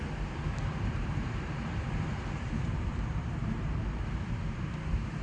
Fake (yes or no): yes